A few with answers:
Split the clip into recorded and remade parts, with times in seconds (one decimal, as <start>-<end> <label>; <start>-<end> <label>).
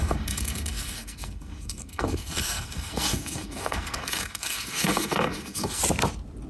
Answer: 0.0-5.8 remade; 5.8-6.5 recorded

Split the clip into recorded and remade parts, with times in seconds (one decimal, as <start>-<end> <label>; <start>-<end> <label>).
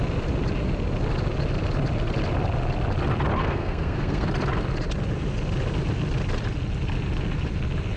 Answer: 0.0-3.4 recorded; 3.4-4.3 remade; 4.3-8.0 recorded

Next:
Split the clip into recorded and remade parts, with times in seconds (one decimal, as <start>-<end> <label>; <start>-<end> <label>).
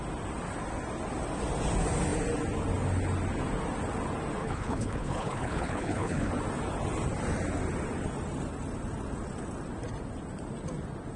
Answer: 0.0-4.4 recorded; 4.4-6.3 remade; 6.3-11.2 recorded